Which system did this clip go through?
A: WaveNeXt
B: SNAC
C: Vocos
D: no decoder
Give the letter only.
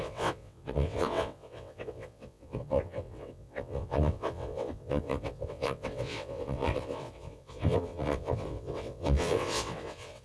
A